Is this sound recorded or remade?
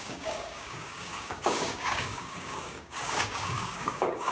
remade